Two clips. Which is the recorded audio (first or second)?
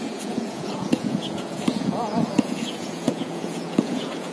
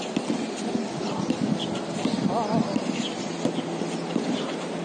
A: second